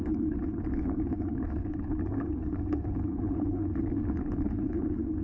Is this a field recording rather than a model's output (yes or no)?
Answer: no